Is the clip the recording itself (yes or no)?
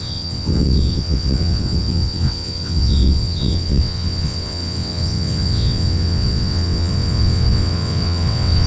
no